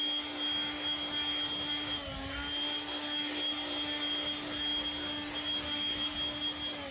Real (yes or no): yes